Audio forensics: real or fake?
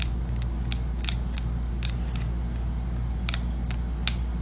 real